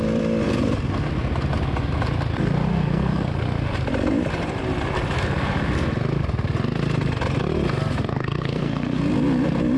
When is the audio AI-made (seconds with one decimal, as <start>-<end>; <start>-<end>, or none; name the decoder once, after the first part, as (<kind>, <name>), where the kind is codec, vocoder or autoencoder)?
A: 2.7-3.3 (codec, SNAC); 8.1-9.0